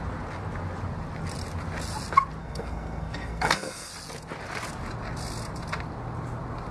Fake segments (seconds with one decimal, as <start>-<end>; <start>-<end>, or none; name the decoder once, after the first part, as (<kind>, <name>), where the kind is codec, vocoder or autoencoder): 2.4-3.9 (codec, SNAC)